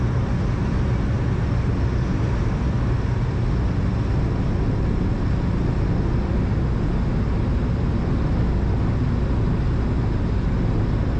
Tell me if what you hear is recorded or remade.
recorded